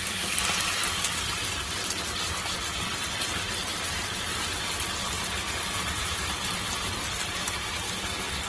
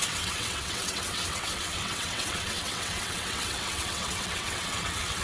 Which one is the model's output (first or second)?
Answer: second